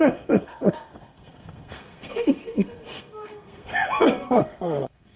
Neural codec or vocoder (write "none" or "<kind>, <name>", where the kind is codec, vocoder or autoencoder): codec, SNAC